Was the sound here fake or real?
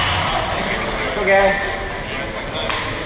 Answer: real